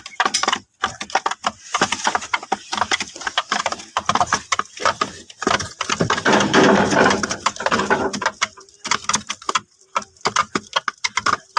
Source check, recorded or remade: recorded